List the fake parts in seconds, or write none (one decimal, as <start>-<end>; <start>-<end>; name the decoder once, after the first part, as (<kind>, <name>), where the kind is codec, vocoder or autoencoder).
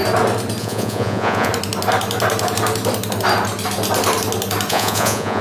0.6-1.5 (vocoder, Vocos); 4.7-5.4